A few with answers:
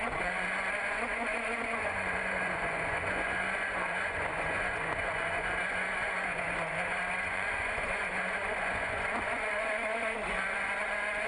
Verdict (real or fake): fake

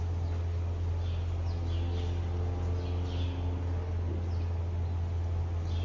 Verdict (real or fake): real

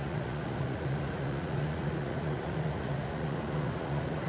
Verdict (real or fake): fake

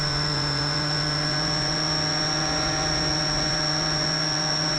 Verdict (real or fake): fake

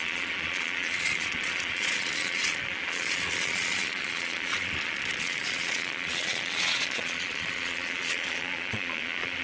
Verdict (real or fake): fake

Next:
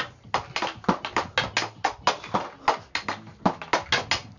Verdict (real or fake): real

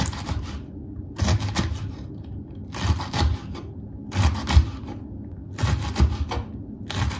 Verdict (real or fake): real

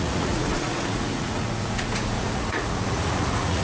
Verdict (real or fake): fake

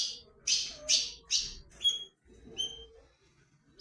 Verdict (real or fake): real